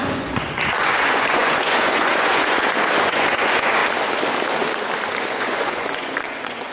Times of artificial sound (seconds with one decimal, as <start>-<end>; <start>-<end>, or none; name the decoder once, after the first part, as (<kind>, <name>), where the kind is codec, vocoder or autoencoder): 0.0-3.8 (vocoder, Vocos); 5.2-6.7